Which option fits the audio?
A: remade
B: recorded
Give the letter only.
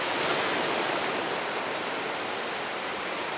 B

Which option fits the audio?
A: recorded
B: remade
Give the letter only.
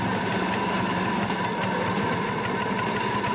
A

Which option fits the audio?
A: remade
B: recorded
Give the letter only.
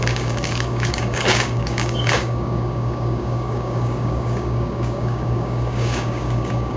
A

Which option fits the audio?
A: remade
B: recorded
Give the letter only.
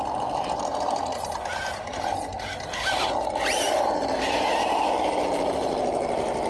B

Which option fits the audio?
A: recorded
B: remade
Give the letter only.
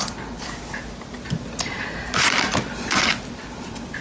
A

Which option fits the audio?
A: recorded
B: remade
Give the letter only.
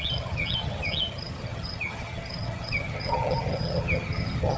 B